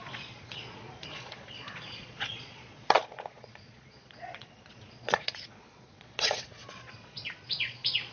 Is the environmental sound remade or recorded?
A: remade